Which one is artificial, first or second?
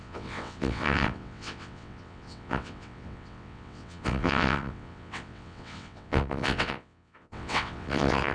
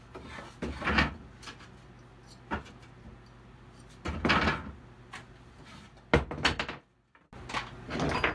first